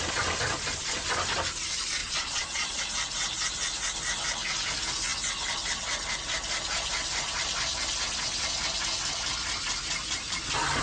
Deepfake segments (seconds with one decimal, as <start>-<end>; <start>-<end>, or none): 2.0-2.8